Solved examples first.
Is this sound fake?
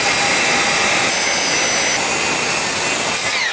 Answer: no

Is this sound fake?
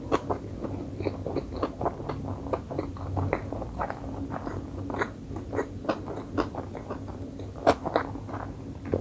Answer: no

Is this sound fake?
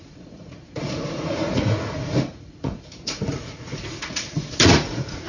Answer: yes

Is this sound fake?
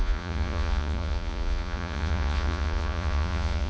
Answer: yes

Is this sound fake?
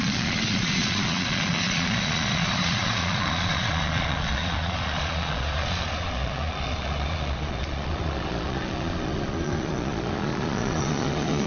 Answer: yes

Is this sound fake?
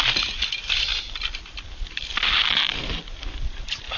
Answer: no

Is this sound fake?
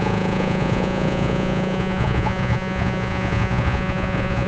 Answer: yes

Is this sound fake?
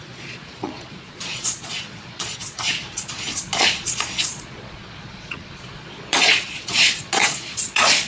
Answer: yes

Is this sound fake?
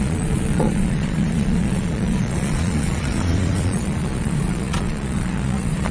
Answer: yes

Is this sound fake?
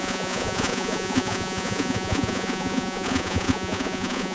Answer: yes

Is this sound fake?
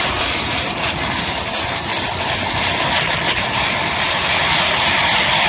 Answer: no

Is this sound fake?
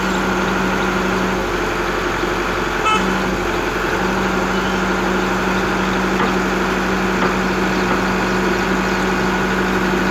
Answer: no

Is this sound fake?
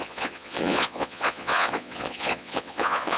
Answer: yes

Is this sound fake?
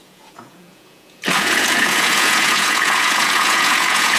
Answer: yes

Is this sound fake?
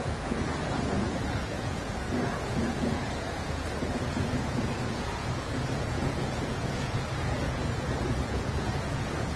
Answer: yes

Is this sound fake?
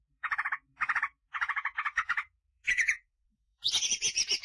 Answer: yes